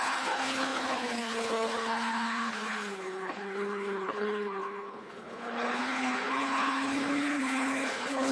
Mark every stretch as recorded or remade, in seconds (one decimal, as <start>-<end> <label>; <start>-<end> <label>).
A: 0.0-8.3 remade